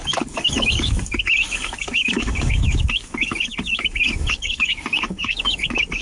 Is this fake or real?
fake